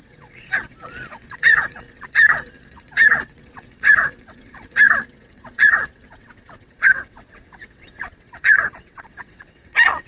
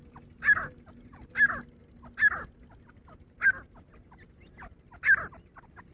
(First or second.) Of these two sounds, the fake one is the first